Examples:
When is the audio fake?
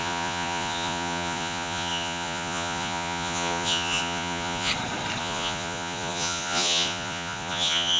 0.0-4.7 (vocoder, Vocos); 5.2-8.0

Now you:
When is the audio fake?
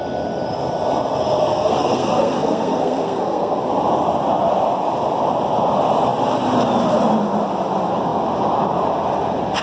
1.5-3.6 (codec, SNAC)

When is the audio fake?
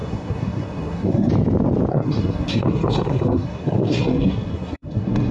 0.0-1.3 (codec, SNAC); 1.9-5.3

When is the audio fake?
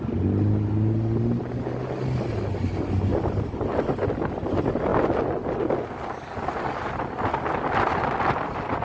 none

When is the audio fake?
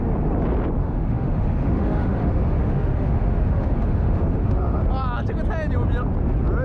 0.8-4.8 (autoencoder, DAC-VAE)